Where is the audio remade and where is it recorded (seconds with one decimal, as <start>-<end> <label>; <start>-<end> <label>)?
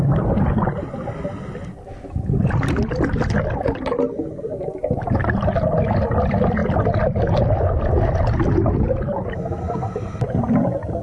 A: 0.0-11.0 recorded